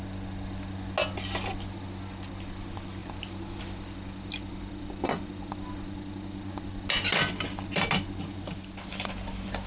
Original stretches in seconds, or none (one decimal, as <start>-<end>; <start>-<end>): 0.0-9.7